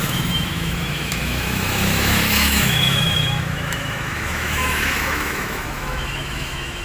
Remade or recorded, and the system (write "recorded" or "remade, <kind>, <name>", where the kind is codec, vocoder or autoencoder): remade, autoencoder, DAC-VAE